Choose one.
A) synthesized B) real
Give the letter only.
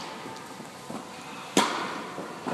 B